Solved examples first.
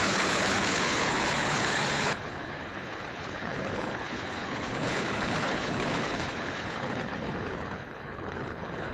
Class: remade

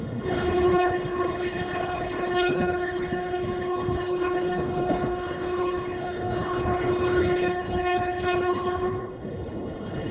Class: remade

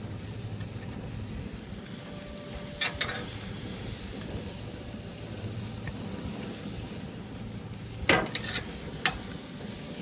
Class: recorded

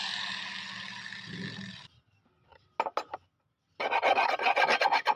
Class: recorded